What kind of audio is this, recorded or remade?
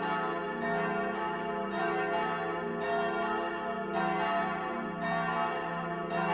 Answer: recorded